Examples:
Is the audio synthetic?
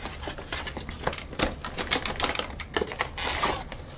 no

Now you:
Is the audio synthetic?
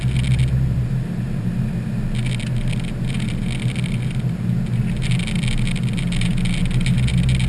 no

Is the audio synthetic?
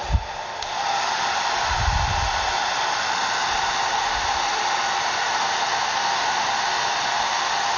yes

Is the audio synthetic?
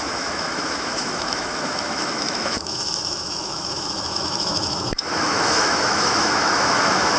yes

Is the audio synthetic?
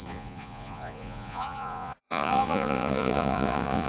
yes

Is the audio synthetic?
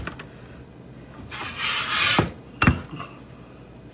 no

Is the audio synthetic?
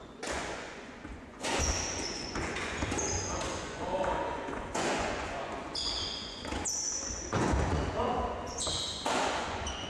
yes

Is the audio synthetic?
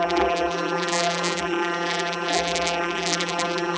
yes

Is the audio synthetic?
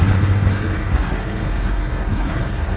yes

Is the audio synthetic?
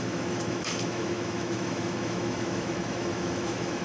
yes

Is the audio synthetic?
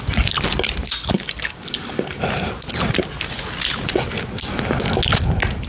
no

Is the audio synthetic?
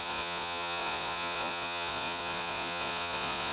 yes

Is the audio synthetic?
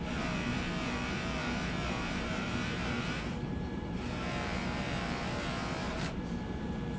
yes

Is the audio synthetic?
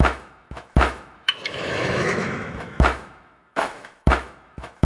yes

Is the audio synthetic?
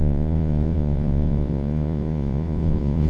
yes